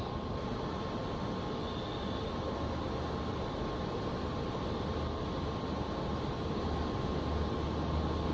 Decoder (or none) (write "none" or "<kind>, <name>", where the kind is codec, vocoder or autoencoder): none